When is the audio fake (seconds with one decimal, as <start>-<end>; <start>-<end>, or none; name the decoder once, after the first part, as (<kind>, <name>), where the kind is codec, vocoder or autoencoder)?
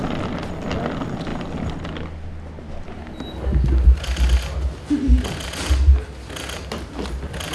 none